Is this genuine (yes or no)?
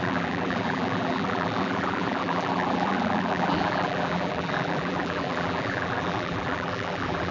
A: no